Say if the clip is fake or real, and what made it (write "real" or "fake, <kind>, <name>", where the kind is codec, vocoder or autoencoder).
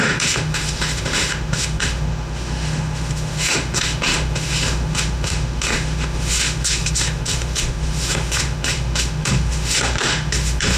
fake, autoencoder, DAC-VAE